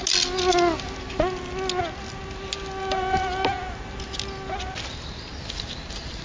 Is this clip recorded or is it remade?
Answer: recorded